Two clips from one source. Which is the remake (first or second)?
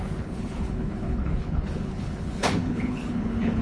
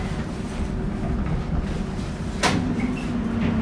first